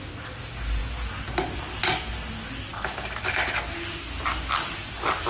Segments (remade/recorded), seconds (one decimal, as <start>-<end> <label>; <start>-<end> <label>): 0.0-5.3 recorded